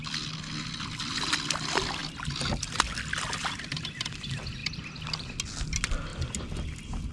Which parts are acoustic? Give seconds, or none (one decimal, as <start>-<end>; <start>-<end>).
0.0-7.1